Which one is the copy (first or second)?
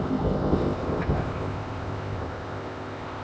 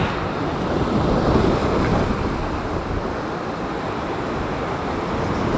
first